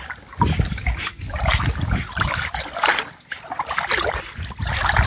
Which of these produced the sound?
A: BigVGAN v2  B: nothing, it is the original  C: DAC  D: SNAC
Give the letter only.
B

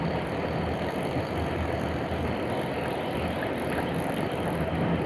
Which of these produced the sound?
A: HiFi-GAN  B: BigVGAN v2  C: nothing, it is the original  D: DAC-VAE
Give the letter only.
C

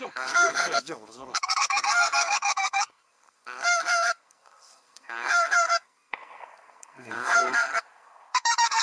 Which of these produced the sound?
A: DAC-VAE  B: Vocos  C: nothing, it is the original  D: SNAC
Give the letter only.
D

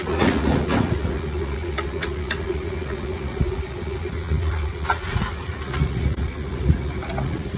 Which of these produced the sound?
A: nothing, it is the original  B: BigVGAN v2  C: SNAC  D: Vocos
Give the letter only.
D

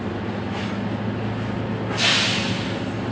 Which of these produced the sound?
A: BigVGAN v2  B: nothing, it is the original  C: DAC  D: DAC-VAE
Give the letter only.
B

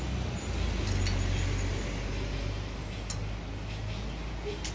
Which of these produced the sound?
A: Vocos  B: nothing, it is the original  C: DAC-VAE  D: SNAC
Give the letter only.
B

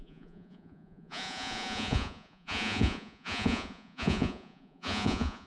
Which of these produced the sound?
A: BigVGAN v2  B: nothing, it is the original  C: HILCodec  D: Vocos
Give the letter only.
D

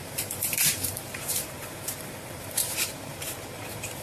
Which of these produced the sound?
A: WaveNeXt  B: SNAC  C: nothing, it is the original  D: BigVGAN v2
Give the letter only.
D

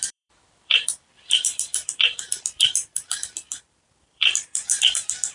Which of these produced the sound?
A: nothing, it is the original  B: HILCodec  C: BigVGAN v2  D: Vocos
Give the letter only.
C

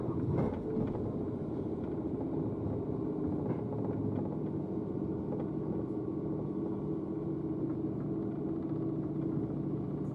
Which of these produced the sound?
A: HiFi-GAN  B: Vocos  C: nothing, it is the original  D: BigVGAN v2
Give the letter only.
C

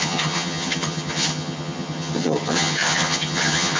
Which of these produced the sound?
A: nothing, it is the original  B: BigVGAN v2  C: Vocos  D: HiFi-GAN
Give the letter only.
D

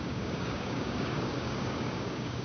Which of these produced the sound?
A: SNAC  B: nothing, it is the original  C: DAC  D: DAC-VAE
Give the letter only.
C